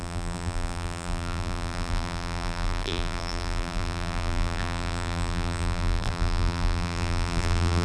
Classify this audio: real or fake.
fake